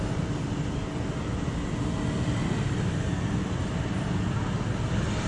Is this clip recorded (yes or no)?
yes